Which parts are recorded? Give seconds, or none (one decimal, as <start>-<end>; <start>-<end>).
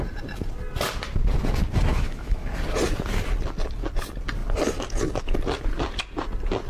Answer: 0.0-1.9; 2.5-6.7